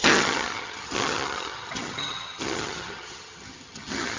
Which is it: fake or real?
fake